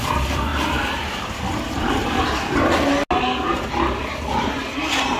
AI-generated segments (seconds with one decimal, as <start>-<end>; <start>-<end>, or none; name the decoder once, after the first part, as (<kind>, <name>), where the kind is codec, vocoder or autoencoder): 0.0-2.0 (vocoder, BigVGAN v2)